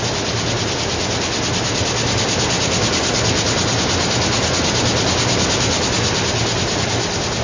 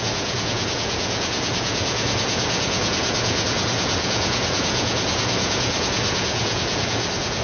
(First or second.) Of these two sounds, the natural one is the first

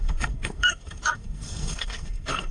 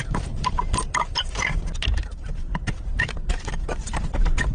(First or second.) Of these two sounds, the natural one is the second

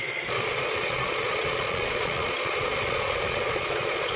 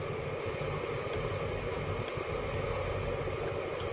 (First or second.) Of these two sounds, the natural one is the second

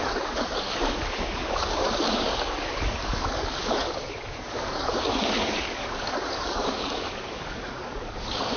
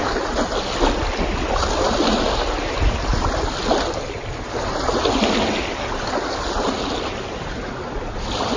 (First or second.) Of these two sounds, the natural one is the second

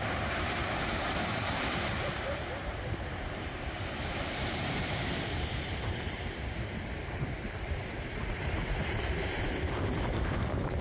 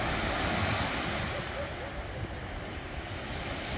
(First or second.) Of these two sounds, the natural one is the second